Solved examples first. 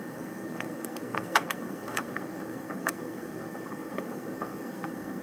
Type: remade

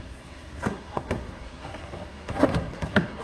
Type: remade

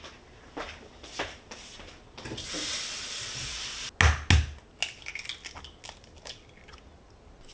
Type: recorded